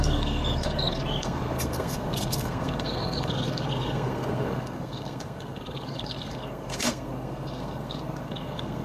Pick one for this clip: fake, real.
fake